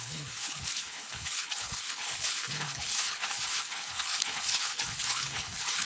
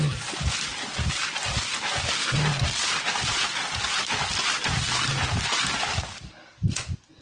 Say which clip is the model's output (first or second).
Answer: first